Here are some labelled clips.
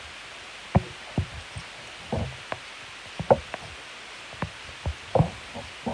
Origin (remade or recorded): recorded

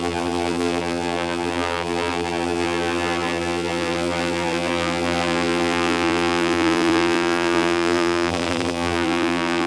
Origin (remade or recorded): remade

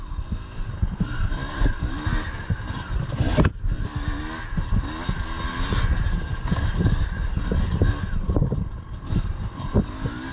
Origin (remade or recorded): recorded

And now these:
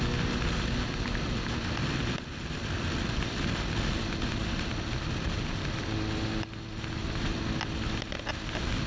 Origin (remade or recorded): recorded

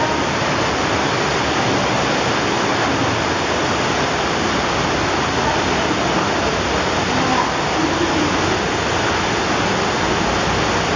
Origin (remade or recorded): recorded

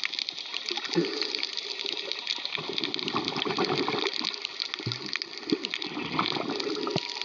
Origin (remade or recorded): recorded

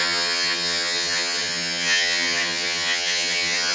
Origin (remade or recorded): remade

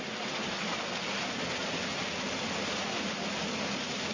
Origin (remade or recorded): recorded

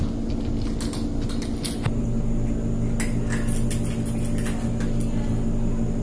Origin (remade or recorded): recorded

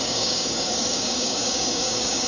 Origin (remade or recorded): remade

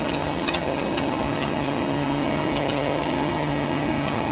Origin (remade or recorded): remade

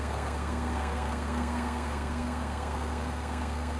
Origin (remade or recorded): remade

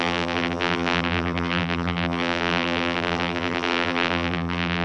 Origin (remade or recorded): remade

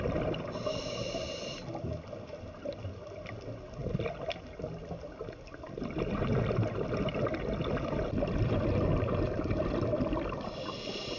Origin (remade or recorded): recorded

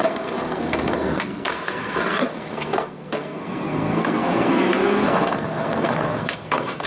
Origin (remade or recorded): remade